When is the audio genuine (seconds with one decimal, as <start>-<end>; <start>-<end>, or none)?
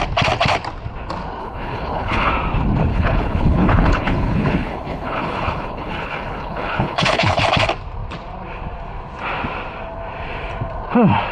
0.0-1.4; 2.3-2.9; 7.4-11.3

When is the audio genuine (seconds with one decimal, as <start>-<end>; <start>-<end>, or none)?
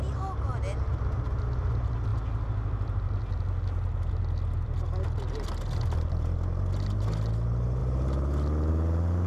0.0-9.3